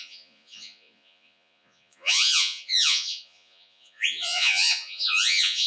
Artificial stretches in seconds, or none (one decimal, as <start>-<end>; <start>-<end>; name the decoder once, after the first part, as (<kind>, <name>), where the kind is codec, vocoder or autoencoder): 0.0-5.7 (vocoder, Vocos)